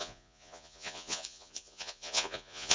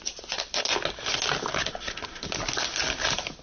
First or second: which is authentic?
second